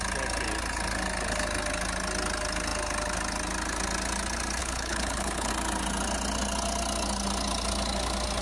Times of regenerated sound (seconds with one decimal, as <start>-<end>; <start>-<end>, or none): 4.6-5.5